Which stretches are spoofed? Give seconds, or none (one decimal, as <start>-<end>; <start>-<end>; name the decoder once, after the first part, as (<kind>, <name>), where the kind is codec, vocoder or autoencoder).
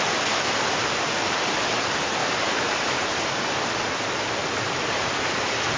2.2-3.1 (vocoder, BigVGAN v2)